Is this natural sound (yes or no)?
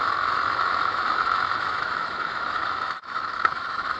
no